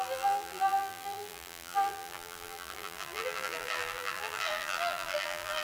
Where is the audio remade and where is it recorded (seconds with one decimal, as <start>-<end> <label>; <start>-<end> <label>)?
0.0-5.6 remade